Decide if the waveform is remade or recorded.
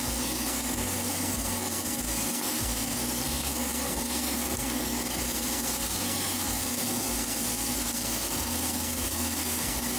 remade